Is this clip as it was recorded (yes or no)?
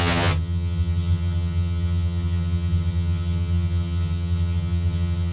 no